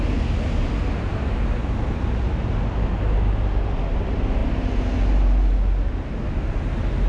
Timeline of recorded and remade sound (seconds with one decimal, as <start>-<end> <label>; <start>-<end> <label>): 0.0-7.1 recorded